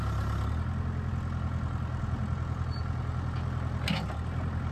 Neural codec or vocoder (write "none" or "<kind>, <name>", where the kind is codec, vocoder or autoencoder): none